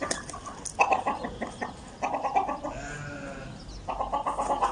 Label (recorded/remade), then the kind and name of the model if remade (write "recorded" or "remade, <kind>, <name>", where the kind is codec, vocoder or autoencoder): recorded